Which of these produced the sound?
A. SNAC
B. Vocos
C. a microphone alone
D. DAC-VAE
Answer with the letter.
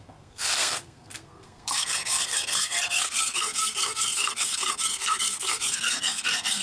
A